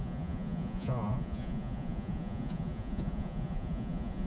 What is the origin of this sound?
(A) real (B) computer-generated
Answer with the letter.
B